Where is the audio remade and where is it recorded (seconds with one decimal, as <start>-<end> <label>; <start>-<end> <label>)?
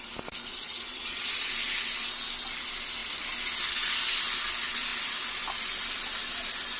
0.0-0.5 recorded; 0.5-1.5 remade; 1.5-6.8 recorded